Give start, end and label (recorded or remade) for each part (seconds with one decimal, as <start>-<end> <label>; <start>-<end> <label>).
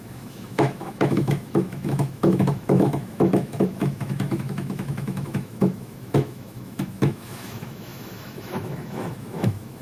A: 0.0-9.8 remade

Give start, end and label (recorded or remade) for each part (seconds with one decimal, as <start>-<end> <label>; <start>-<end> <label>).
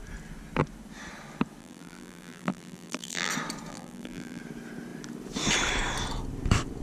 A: 0.0-1.6 recorded; 1.6-3.3 remade; 3.3-3.7 recorded; 3.7-4.4 remade; 4.4-6.8 recorded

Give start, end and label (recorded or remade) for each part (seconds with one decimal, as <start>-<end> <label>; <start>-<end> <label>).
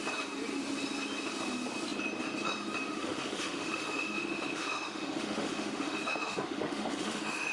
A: 0.0-2.9 recorded; 2.9-7.5 remade